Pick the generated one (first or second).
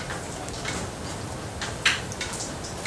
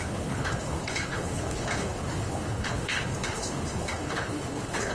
second